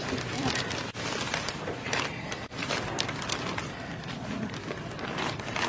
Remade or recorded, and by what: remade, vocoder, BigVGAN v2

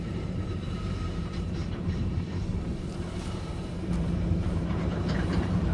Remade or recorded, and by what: remade, vocoder, BigVGAN v2